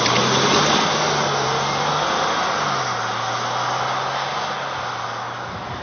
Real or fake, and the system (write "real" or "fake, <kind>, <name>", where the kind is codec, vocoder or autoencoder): real